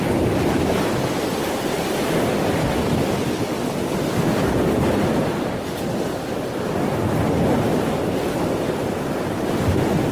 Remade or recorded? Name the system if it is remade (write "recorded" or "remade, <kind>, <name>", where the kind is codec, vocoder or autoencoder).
recorded